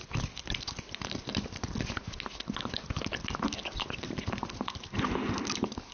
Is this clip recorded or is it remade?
recorded